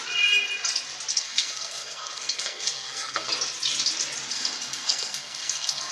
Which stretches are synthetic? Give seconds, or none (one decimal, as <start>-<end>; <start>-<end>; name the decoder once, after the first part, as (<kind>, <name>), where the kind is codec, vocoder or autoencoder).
1.1-3.3 (codec, SNAC); 4.3-5.9